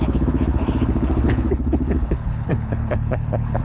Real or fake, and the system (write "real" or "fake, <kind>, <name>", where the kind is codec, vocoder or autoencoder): fake, codec, HILCodec